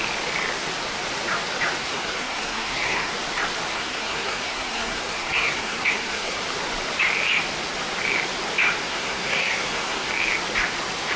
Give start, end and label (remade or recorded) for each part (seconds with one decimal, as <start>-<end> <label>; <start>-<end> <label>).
0.0-1.8 recorded; 1.8-3.1 remade; 3.1-3.7 recorded; 3.7-6.4 remade; 6.4-8.8 recorded; 8.8-10.1 remade; 10.1-11.2 recorded

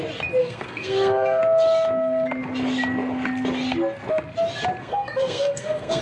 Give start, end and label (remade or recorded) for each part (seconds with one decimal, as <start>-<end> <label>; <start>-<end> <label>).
0.0-0.4 recorded; 0.4-1.4 remade; 1.4-4.8 recorded; 4.8-6.0 remade

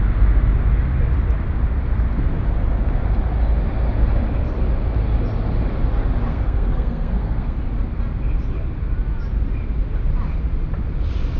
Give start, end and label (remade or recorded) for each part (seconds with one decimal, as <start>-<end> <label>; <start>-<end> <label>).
0.0-6.3 recorded; 6.3-7.6 remade; 7.6-11.4 recorded

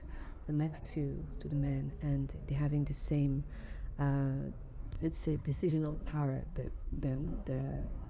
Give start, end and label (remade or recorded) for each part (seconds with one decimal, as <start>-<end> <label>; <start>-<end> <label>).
0.0-0.9 remade; 0.9-4.8 recorded; 4.8-8.1 remade